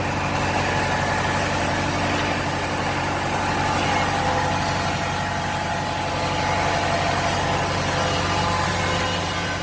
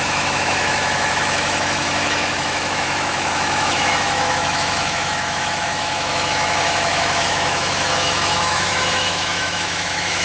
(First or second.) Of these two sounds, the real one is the first